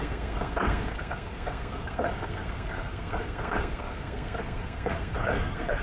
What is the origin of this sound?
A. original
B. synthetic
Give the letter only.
B